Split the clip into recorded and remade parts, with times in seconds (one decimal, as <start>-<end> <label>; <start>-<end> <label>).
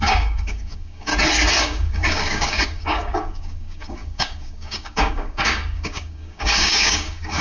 0.0-1.1 remade; 1.1-1.6 recorded; 1.6-7.4 remade